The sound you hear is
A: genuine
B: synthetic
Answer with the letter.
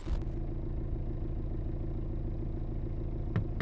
A